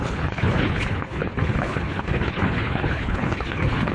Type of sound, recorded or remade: remade